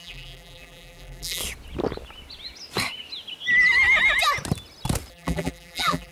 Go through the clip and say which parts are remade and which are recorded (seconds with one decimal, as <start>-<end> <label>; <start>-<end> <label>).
0.0-1.4 remade; 1.4-5.1 recorded; 5.1-6.1 remade